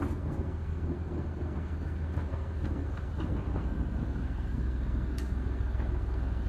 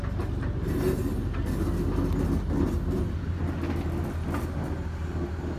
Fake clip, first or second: first